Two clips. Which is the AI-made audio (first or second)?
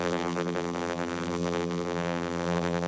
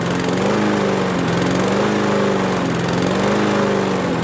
first